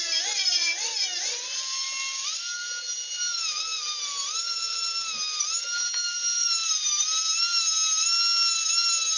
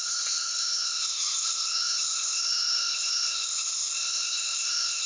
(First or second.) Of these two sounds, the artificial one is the second